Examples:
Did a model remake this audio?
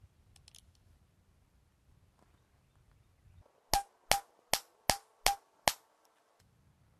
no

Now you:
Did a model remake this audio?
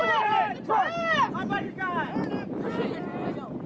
yes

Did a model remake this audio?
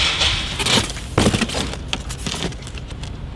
no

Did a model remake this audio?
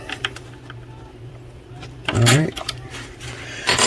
yes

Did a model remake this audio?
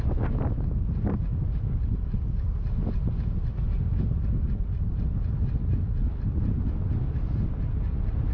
no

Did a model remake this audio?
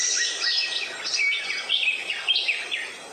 no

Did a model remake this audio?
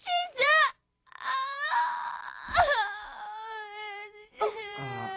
yes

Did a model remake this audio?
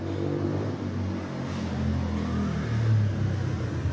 no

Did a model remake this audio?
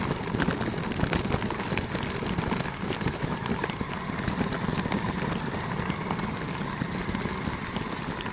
no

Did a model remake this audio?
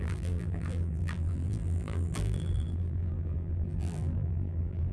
yes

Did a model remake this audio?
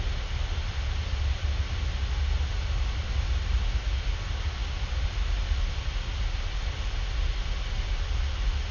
no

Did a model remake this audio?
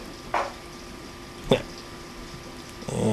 no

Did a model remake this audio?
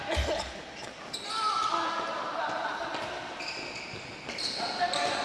no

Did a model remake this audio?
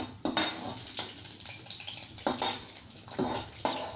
no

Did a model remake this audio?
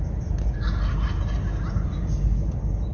no